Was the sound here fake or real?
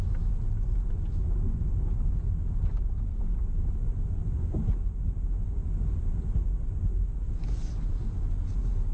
real